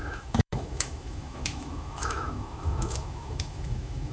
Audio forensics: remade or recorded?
remade